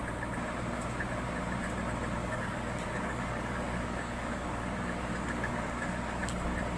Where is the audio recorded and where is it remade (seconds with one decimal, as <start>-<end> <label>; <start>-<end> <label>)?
0.0-2.2 recorded; 2.2-6.3 remade; 6.3-6.8 recorded